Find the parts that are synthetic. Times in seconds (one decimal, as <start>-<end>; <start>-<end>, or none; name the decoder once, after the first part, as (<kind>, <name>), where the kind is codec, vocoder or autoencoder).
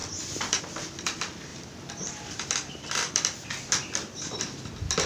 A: 0.0-0.6 (vocoder, BigVGAN v2); 1.5-4.6